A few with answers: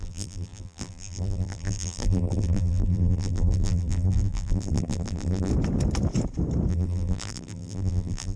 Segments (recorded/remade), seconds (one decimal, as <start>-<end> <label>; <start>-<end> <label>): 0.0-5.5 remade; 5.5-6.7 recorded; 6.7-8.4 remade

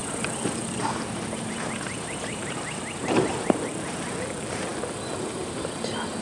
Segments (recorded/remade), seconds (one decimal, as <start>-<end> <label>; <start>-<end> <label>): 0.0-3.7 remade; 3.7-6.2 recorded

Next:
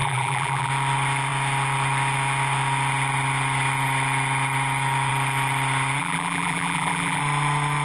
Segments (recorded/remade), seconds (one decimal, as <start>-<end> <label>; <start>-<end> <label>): 0.0-0.7 remade; 0.7-6.0 recorded; 6.0-7.2 remade; 7.2-7.8 recorded